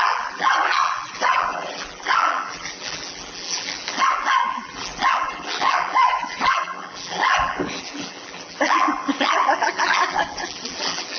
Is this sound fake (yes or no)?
yes